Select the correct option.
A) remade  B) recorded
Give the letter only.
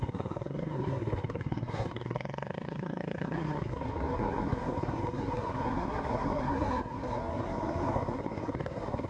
A